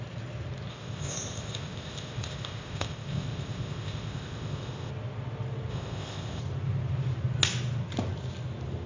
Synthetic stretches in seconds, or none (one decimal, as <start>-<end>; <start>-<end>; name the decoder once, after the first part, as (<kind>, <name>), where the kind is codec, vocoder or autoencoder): 0.7-4.9 (codec, ZipCodec); 5.7-6.4